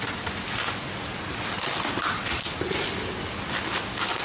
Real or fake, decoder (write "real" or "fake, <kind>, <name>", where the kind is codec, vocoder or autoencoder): real